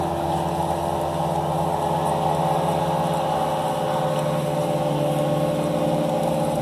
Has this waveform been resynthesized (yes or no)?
no